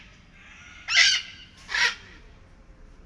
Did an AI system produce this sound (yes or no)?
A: no